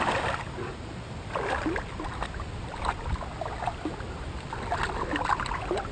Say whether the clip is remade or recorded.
recorded